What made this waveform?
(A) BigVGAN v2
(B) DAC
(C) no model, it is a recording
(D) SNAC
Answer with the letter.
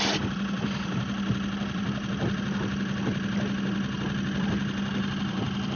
C